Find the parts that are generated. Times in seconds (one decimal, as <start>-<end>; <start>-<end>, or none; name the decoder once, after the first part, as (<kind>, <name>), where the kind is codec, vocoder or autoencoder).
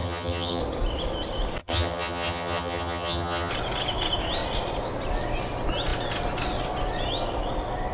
0.0-0.6 (vocoder, HiFi-GAN); 1.6-3.5